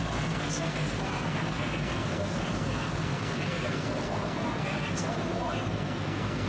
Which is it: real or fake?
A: fake